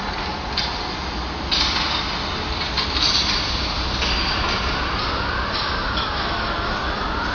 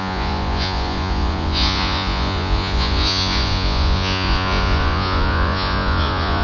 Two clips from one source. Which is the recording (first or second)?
first